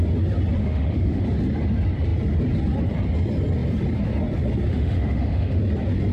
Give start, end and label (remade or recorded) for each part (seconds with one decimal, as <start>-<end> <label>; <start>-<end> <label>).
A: 0.0-0.6 recorded; 0.6-1.2 remade; 1.2-4.7 recorded; 4.7-5.6 remade; 5.6-6.1 recorded

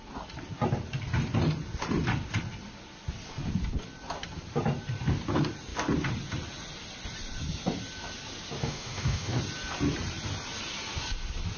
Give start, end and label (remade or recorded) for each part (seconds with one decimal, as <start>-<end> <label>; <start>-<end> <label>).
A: 0.0-8.6 recorded; 8.6-9.4 remade; 9.4-11.6 recorded

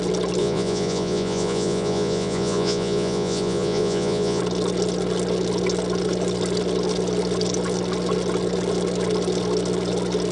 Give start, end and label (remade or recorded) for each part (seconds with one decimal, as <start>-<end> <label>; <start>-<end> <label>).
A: 0.0-0.4 recorded; 0.4-4.4 remade; 4.4-10.3 recorded